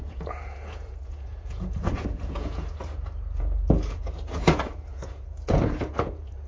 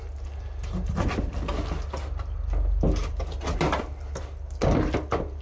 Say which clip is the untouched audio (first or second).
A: second